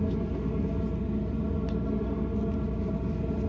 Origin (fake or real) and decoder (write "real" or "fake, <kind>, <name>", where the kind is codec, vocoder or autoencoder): real